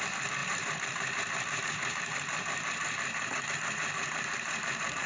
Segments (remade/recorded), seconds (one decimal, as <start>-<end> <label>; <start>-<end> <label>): 0.0-5.1 remade